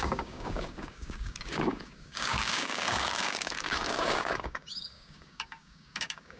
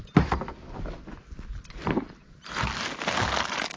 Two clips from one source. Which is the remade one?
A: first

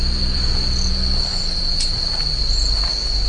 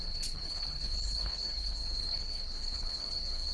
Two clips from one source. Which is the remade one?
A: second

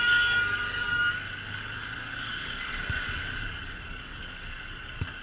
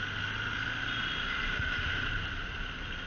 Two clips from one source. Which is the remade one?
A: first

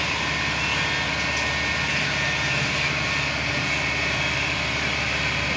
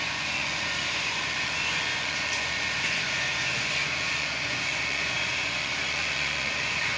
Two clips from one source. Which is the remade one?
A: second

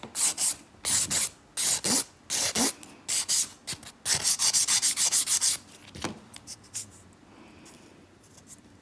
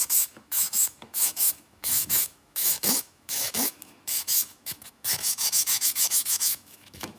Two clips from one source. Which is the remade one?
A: second